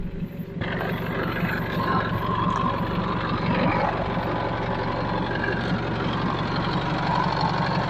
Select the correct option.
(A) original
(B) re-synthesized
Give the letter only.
A